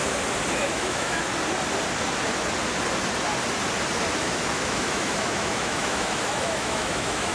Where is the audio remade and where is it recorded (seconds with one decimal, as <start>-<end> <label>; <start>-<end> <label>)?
0.0-0.5 recorded; 0.5-1.3 remade; 1.3-4.2 recorded; 4.2-7.3 remade